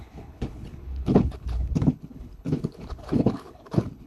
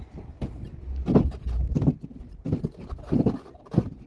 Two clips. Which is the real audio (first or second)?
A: second